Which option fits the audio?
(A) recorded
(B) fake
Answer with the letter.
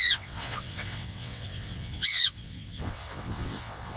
B